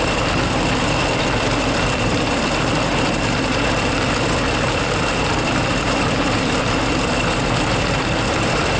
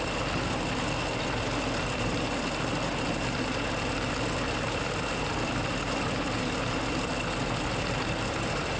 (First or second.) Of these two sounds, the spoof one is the first